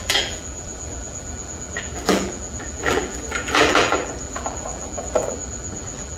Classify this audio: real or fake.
fake